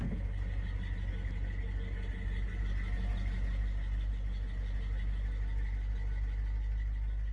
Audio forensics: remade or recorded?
recorded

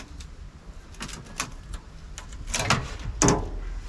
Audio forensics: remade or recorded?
recorded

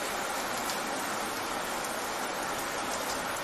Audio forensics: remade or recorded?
recorded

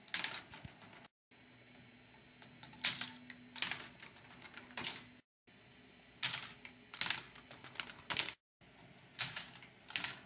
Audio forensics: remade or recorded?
recorded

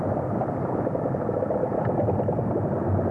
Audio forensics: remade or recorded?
recorded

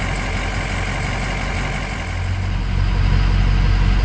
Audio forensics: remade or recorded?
recorded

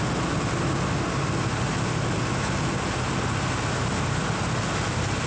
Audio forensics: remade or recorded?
recorded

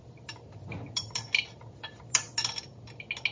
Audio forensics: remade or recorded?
recorded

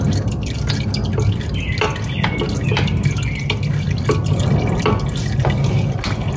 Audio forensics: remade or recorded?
recorded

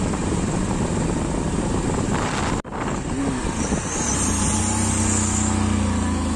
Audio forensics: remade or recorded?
recorded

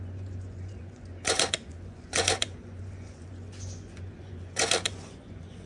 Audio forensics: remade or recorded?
remade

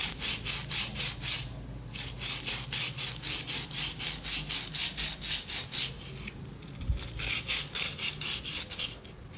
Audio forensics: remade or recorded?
recorded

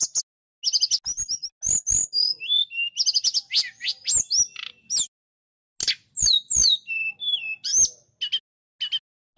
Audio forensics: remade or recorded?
recorded